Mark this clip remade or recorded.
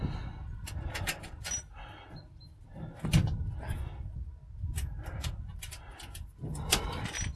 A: recorded